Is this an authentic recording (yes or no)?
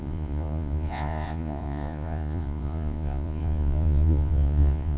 no